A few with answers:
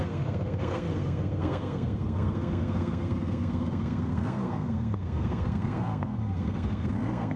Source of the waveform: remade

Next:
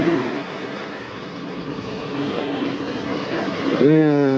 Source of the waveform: remade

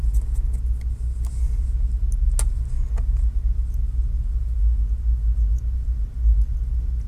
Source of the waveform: recorded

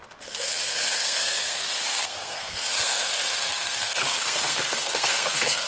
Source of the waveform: remade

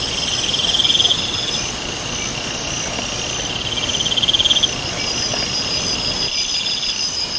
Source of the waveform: recorded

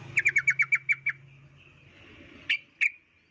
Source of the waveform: recorded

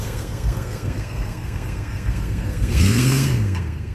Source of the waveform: remade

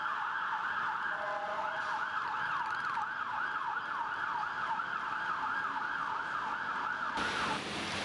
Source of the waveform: recorded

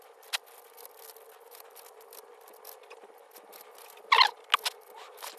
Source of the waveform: recorded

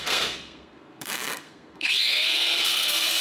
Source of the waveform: remade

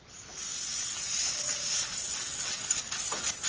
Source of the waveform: recorded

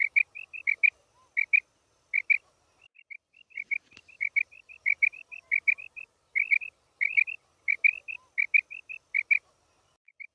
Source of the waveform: recorded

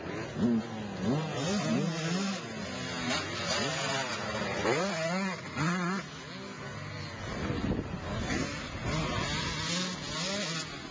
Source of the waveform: recorded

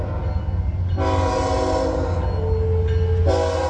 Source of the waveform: recorded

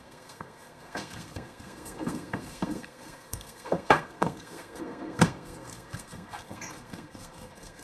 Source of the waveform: remade